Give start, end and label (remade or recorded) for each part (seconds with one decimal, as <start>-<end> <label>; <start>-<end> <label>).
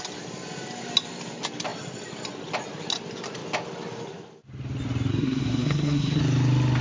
0.0-5.1 recorded; 5.1-6.2 remade; 6.2-6.8 recorded